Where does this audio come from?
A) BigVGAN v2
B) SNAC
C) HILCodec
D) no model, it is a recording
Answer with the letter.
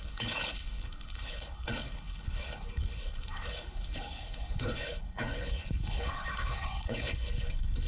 C